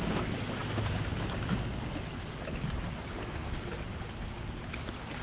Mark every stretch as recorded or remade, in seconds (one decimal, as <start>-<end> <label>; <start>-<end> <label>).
0.0-5.2 recorded